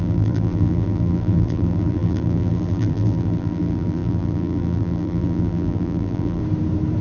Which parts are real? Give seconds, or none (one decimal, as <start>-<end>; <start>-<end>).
6.4-7.0